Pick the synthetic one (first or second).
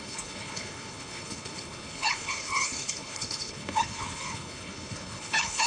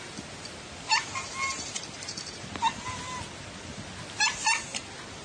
first